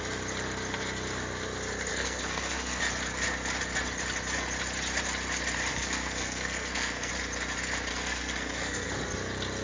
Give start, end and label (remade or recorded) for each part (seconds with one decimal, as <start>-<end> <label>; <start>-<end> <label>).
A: 0.0-1.9 recorded; 1.9-2.8 remade; 2.8-5.7 recorded; 5.7-7.1 remade; 7.1-7.9 recorded; 7.9-8.9 remade; 8.9-9.6 recorded